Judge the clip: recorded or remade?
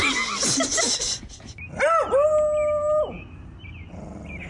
recorded